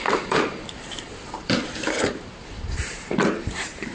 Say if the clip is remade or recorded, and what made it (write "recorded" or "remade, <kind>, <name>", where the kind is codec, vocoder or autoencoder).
remade, vocoder, BigVGAN v2